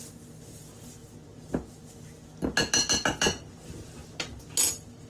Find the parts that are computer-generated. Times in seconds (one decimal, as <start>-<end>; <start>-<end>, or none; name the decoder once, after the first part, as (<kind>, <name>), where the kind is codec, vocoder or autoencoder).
none